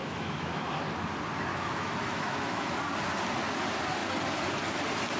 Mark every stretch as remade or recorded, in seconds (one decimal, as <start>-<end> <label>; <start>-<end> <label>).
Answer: 0.0-0.8 remade; 0.8-1.5 recorded; 1.5-2.7 remade; 2.7-5.2 recorded